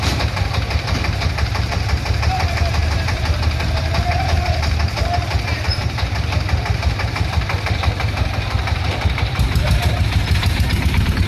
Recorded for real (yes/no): no